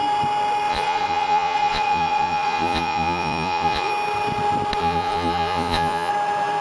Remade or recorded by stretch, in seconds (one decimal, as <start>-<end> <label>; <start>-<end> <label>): 0.0-0.7 recorded; 0.7-3.9 remade; 3.9-4.8 recorded; 4.8-6.1 remade; 6.1-6.6 recorded